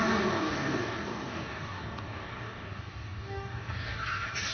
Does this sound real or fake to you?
fake